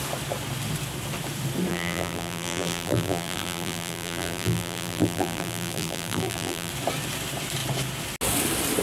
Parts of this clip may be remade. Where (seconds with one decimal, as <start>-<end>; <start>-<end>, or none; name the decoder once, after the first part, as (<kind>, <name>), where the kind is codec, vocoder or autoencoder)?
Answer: 1.7-6.7 (vocoder, BigVGAN v2)